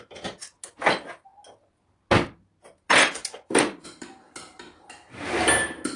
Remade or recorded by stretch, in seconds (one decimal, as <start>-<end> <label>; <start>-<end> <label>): 0.0-6.0 recorded